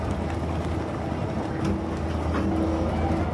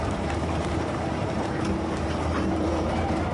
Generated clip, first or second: second